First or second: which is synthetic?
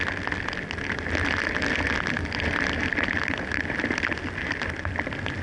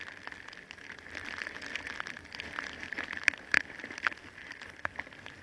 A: second